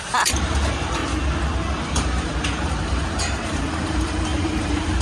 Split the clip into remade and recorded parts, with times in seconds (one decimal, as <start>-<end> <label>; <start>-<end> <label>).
0.0-1.0 remade; 1.0-1.8 recorded; 1.8-5.0 remade